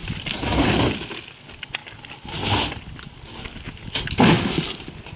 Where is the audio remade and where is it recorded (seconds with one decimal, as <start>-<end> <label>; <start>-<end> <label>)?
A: 0.0-5.2 recorded